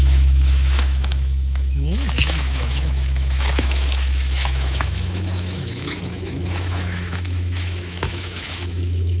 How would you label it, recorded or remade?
remade